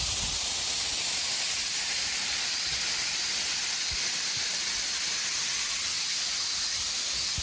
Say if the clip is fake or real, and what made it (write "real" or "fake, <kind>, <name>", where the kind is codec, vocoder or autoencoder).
real